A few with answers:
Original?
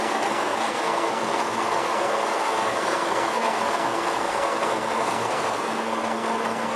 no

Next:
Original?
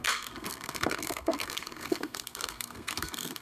no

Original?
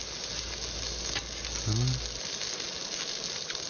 yes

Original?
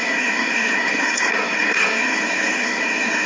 no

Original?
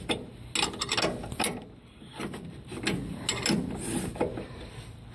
yes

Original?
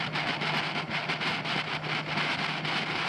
yes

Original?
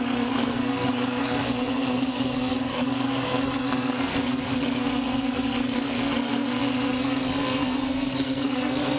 no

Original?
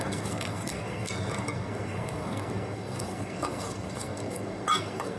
no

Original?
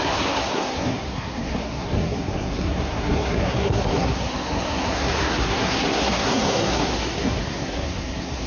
no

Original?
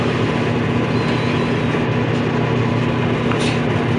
yes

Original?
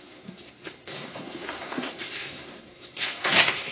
no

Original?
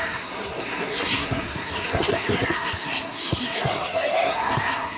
no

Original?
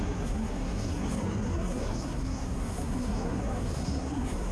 no